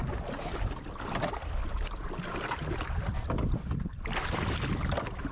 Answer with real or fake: real